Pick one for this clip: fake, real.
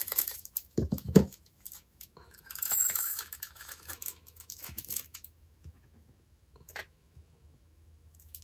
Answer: fake